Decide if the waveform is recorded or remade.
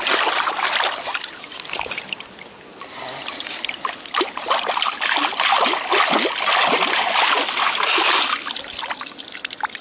recorded